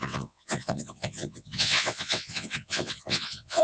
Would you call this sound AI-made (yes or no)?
yes